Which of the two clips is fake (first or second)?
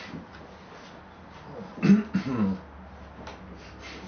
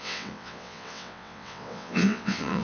second